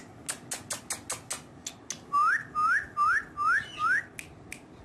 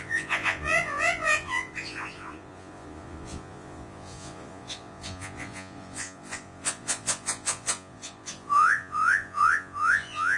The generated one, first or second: second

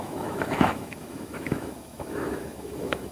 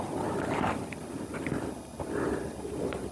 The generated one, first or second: first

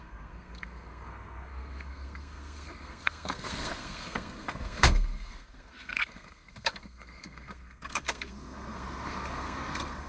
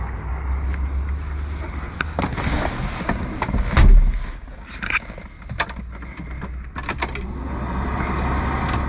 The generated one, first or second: first